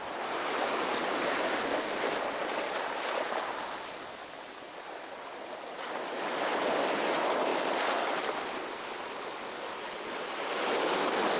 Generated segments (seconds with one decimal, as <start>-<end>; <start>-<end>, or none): none